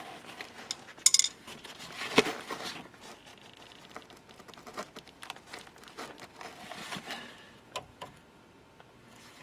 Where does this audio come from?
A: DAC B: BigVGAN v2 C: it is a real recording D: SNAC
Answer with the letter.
C